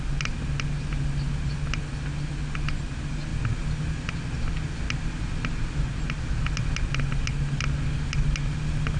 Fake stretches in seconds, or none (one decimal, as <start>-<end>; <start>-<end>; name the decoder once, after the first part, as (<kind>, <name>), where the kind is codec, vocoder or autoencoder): none